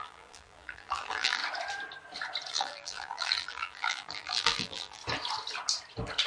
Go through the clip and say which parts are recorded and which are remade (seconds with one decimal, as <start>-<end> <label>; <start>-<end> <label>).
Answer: 0.0-1.4 remade; 1.4-2.5 recorded; 2.5-5.0 remade; 5.0-6.3 recorded